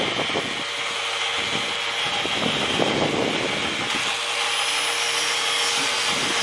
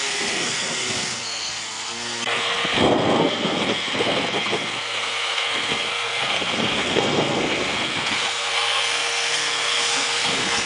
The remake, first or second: second